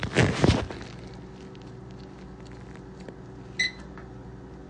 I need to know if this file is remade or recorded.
recorded